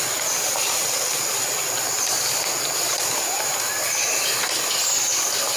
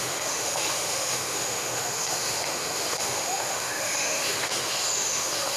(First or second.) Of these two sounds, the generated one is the second